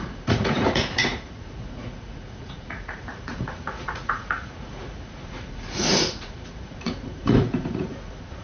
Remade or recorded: remade